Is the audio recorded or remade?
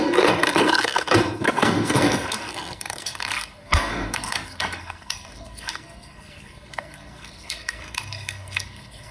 remade